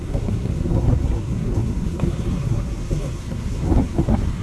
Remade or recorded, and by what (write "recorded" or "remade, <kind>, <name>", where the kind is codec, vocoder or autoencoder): remade, codec, SNAC